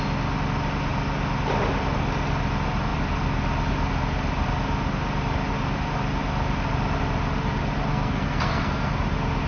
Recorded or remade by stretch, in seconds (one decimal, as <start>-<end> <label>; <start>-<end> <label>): 0.0-7.9 recorded; 7.9-8.9 remade; 8.9-9.5 recorded